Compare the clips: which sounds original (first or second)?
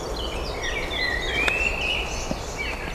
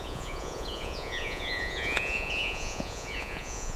first